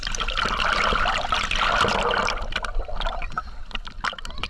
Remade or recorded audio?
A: recorded